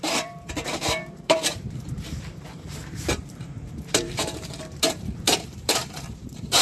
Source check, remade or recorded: remade